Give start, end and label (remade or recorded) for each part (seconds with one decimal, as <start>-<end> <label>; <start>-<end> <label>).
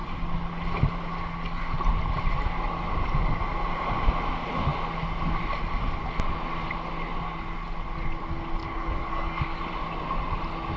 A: 0.0-8.6 recorded; 8.6-9.6 remade; 9.6-10.8 recorded